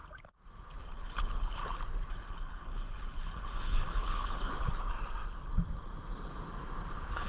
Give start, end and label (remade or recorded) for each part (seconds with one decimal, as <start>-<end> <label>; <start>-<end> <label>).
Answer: 0.0-0.8 recorded; 0.8-1.6 remade; 1.6-2.1 recorded; 2.1-4.5 remade; 4.5-7.3 recorded